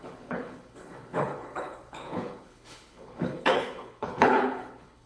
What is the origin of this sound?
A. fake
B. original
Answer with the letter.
A